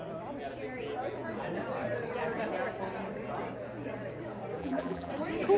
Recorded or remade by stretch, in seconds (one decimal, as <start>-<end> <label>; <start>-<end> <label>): 0.0-4.6 recorded; 4.6-5.1 remade; 5.1-5.6 recorded